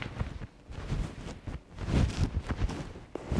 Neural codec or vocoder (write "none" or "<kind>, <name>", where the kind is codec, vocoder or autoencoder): none